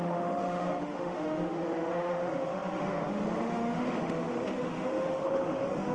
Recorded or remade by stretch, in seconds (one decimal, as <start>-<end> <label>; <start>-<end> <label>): 0.0-5.9 remade